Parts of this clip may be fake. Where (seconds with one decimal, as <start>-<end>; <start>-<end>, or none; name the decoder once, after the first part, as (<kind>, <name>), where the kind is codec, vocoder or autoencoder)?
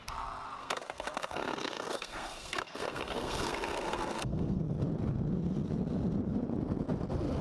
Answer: 0.6-4.6 (codec, SNAC)